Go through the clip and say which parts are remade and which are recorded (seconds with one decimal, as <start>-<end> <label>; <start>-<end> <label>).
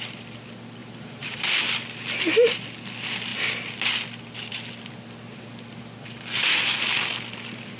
0.0-0.8 recorded; 0.8-1.6 remade; 1.6-7.8 recorded